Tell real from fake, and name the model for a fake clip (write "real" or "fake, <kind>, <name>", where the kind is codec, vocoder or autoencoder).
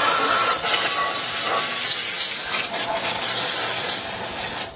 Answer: real